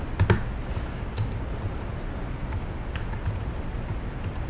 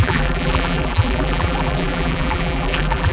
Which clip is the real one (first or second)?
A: first